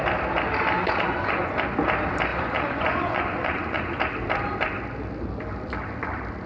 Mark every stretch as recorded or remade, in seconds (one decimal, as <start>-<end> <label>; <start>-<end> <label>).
0.0-0.8 recorded; 0.8-1.5 remade; 1.5-2.3 recorded; 2.3-4.0 remade; 4.0-6.5 recorded